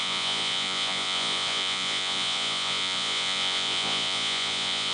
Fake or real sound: fake